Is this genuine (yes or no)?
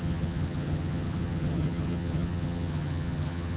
no